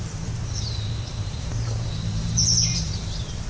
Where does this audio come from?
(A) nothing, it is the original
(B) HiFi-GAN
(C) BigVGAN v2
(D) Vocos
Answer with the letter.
C